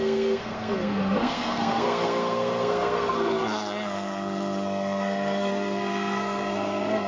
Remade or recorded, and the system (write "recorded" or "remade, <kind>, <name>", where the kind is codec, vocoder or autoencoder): remade, codec, SNAC